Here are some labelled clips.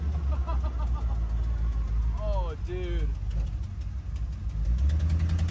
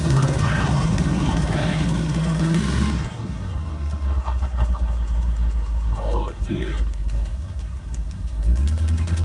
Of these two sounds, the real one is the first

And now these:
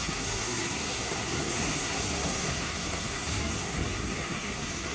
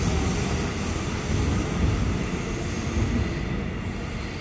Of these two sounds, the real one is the second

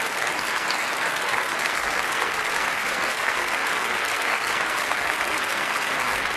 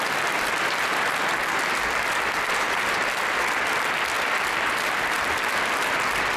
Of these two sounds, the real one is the second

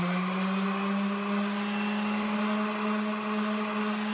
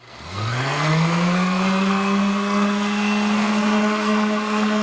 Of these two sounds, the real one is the first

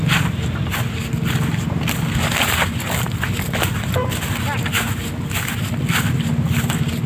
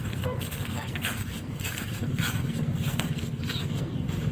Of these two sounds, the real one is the first